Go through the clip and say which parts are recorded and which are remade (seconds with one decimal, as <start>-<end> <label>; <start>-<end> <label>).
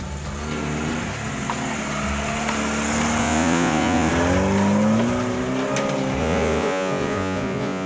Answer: 0.0-3.2 recorded; 3.2-4.1 remade; 4.1-6.2 recorded; 6.2-7.9 remade